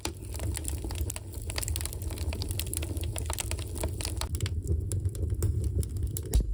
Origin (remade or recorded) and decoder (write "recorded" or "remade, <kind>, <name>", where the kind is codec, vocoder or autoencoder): recorded